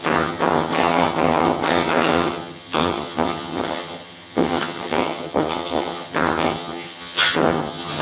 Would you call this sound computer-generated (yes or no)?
yes